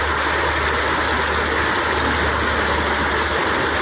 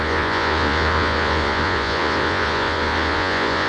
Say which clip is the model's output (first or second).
second